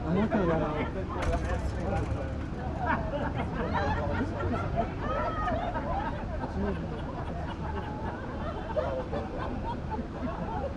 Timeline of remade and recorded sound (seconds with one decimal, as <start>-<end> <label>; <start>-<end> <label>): 0.0-3.5 recorded; 3.5-4.5 remade; 4.5-10.8 recorded